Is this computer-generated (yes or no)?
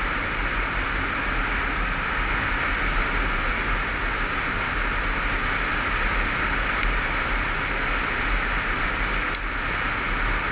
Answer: no